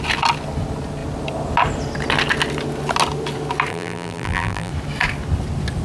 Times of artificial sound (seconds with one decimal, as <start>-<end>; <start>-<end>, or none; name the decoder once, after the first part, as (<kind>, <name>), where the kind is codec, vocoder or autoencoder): 3.7-4.7 (vocoder, BigVGAN v2)